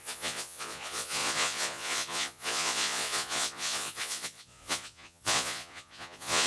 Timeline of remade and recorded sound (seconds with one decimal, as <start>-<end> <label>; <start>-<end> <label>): 0.0-6.5 remade